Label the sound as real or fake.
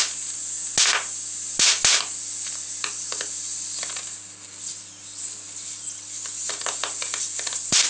real